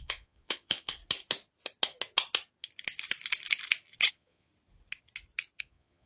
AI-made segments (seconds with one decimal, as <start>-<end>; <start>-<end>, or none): 0.0-1.0; 4.1-4.5; 5.6-6.1

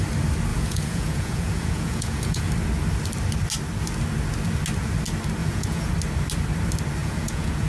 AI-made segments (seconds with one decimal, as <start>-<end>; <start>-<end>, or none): 0.5-2.5; 5.4-5.9; 7.0-7.7

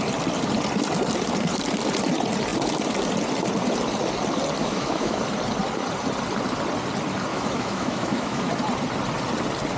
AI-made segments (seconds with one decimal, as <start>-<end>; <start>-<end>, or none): 4.6-5.2; 7.3-8.5

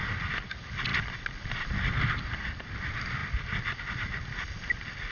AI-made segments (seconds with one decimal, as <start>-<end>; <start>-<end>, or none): 0.0-5.1